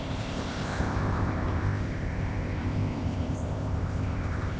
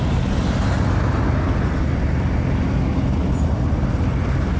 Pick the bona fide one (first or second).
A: second